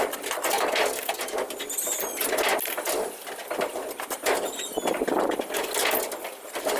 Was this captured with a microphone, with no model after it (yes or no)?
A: yes